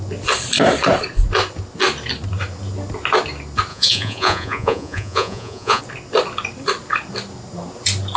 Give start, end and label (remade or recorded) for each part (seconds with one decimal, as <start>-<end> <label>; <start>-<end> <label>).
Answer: 0.0-3.7 recorded; 3.7-5.8 remade; 5.8-8.2 recorded